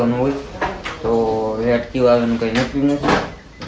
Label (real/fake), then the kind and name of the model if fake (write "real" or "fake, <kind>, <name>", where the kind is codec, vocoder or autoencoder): real